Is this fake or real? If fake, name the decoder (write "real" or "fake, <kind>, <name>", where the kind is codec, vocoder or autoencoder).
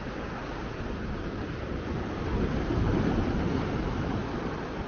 real